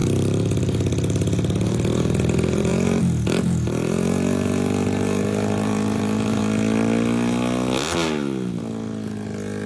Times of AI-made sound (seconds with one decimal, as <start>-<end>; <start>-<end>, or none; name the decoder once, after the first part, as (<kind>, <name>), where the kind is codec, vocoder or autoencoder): 0.0-6.4 (vocoder, BigVGAN v2)